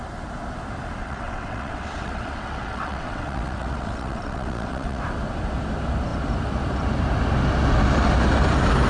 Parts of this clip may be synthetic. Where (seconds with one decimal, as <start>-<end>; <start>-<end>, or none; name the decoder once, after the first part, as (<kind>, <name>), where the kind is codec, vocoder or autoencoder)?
1.0-5.0 (vocoder, WaveNeXt)